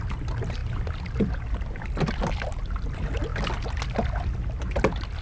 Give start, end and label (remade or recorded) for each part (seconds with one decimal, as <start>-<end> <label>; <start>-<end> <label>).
0.0-5.2 recorded